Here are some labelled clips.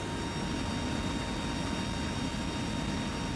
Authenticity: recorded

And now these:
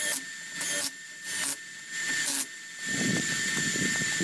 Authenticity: recorded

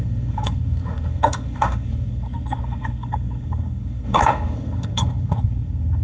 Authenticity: remade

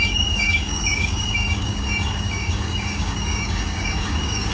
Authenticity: remade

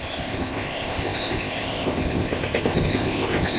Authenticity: remade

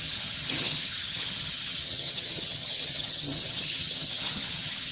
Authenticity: remade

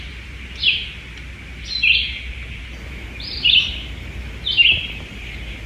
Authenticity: recorded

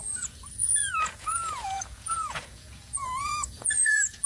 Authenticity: remade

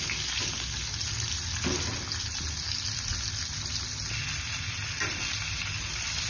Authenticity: recorded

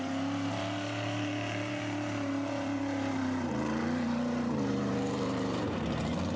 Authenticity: remade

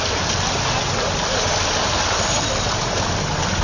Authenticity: recorded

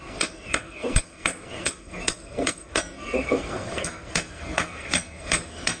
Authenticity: remade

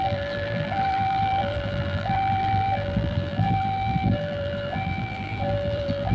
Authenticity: remade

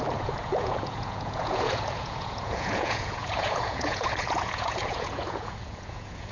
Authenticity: remade